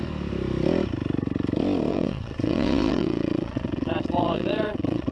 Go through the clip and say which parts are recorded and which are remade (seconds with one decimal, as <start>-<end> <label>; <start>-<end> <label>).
0.0-1.9 recorded; 1.9-5.1 remade